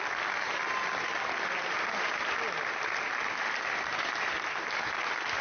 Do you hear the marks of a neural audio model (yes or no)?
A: no